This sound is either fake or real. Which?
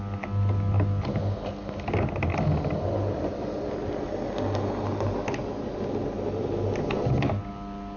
real